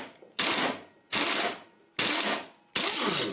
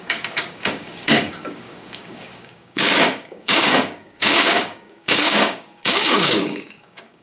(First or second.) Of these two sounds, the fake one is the second